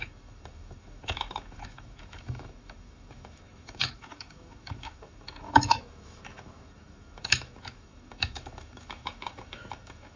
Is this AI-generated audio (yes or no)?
yes